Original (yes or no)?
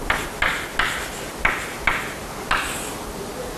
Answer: yes